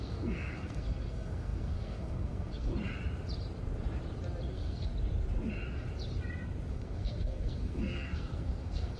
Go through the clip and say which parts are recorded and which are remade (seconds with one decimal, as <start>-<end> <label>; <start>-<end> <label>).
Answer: 0.0-2.7 remade; 2.7-4.5 recorded; 4.5-4.9 remade; 4.9-6.7 recorded; 6.7-9.0 remade